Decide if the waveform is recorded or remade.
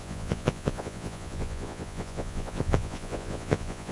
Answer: remade